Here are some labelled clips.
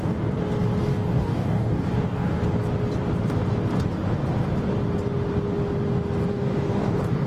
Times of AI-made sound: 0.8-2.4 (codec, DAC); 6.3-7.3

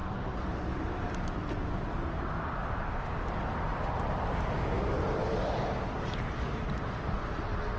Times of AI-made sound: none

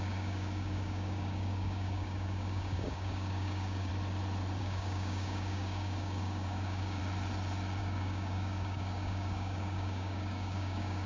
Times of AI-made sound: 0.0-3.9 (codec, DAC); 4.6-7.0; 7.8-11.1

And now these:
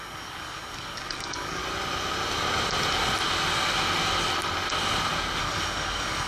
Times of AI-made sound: 0.0-1.6 (codec, DAC); 5.4-6.3

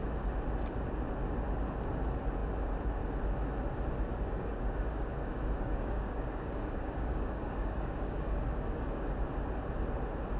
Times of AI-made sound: 4.1-9.2 (codec, DAC)

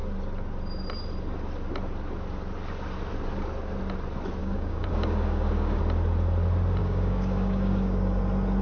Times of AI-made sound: 4.4-5.8 (codec, DAC); 6.8-8.2